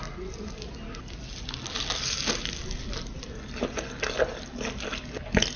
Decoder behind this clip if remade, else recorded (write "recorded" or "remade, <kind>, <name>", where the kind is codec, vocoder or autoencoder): recorded